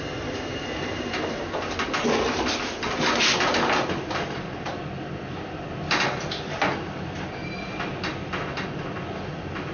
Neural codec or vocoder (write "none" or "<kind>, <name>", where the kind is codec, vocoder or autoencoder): none